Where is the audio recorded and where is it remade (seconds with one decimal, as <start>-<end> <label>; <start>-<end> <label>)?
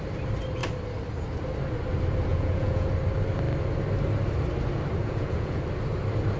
0.0-2.3 recorded; 2.3-2.9 remade; 2.9-5.0 recorded; 5.0-5.6 remade; 5.6-6.4 recorded